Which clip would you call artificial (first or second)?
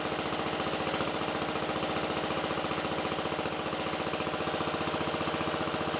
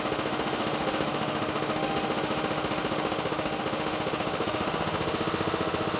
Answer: second